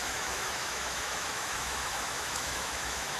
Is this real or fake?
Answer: fake